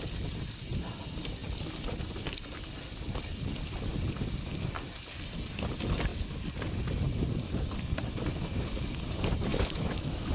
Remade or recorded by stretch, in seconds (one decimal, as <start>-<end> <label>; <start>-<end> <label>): 0.0-9.5 recorded; 9.5-10.3 remade